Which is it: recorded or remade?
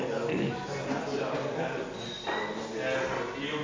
recorded